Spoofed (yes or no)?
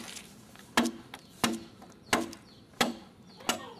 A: no